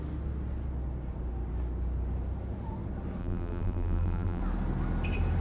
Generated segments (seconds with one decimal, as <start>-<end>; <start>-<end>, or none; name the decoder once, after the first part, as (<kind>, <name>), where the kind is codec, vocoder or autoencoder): 3.2-4.4 (vocoder, BigVGAN v2)